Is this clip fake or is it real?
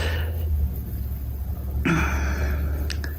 real